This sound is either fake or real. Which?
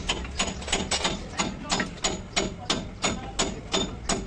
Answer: real